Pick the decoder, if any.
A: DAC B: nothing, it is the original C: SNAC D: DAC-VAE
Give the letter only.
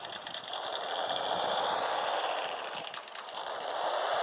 B